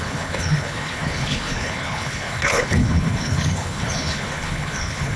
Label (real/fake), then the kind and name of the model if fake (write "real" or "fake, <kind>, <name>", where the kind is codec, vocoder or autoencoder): fake, codec, HILCodec